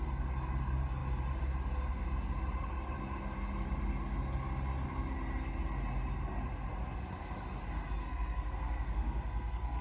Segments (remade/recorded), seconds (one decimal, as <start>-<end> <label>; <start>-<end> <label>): 0.0-8.0 recorded; 8.0-9.8 remade